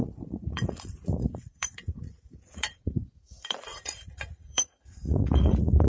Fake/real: fake